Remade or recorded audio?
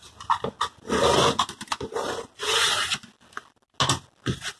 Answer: recorded